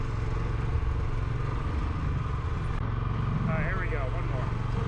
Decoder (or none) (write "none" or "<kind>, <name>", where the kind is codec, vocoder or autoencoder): none